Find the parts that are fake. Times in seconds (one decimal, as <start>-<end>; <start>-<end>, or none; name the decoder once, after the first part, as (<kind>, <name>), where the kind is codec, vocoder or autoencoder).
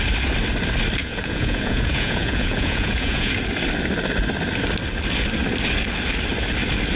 1.0-3.3 (vocoder, Vocos)